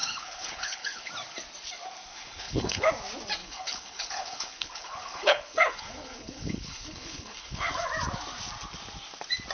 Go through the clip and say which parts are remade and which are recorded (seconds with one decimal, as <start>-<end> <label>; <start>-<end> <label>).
0.0-1.1 remade; 1.1-2.1 recorded; 2.1-2.9 remade; 2.9-3.4 recorded; 3.4-7.7 remade; 7.7-9.5 recorded